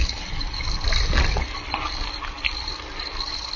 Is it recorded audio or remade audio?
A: recorded